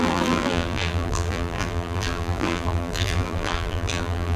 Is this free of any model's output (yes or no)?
no